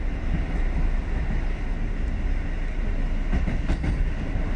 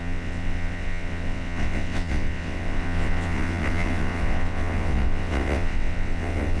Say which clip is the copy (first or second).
second